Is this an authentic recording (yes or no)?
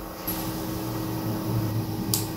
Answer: yes